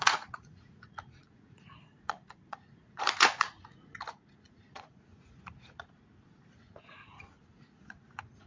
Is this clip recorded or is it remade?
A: remade